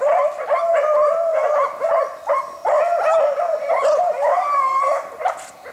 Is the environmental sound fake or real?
real